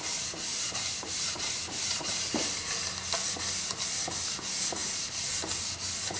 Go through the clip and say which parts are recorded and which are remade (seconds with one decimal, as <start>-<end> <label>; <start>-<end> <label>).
0.0-0.5 recorded; 0.5-2.7 remade; 2.7-4.8 recorded; 4.8-5.6 remade; 5.6-6.2 recorded